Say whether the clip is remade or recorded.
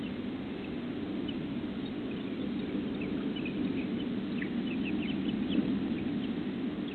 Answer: recorded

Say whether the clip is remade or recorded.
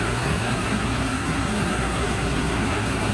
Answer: remade